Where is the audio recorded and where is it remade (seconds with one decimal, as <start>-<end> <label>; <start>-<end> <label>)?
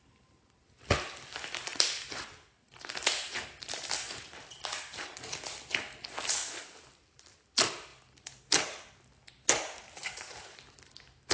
0.0-11.3 recorded